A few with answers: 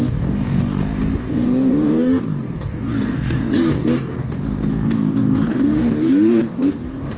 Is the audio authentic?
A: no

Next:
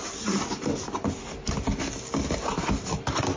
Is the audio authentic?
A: yes